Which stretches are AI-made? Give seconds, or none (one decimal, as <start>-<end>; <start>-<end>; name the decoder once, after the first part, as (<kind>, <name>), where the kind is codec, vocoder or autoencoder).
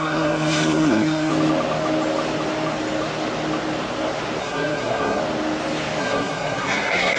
0.0-1.3 (codec, SNAC); 4.4-5.2; 6.0-7.2